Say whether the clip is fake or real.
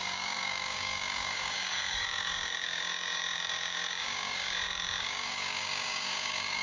fake